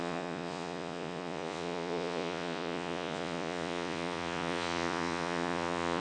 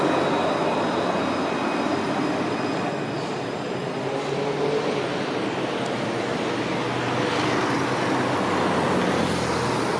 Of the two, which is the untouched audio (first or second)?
second